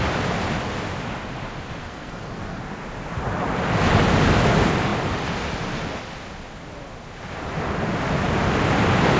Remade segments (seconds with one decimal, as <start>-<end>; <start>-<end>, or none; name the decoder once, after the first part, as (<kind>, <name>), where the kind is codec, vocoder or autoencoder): 1.8-2.6 (codec, SNAC)